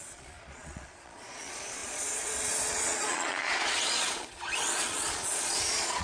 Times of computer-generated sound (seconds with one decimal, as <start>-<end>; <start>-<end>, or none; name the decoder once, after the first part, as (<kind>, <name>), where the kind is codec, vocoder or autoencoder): 0.0-6.0 (vocoder, Vocos)